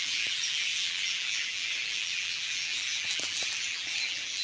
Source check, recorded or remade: remade